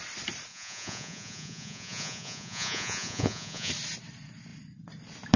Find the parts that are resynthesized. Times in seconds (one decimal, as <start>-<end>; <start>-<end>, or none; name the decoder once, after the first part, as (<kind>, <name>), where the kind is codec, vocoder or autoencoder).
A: 0.5-3.7 (vocoder, Vocos)